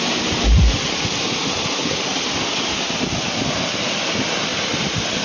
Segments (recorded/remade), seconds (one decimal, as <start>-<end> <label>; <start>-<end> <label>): 0.0-5.2 recorded